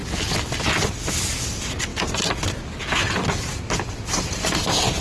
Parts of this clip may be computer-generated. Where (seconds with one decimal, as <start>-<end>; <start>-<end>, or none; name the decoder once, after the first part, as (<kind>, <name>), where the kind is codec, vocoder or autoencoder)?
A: none